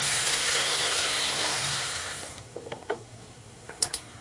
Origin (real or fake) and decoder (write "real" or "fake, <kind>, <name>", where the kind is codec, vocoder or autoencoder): fake, codec, SNAC